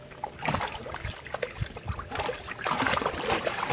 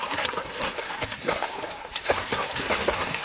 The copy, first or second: second